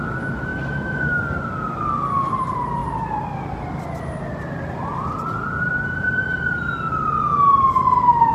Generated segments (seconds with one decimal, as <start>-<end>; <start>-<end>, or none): 0.5-1.2